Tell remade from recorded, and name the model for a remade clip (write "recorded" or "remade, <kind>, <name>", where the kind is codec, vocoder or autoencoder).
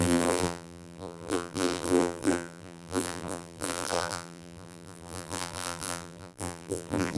remade, vocoder, BigVGAN v2